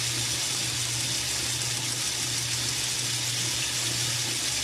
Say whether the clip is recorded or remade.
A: recorded